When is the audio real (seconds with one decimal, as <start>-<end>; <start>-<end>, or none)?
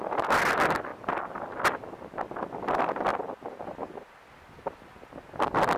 0.0-5.8